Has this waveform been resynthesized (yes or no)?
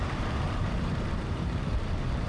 yes